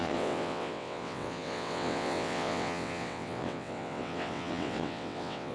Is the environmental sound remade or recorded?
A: remade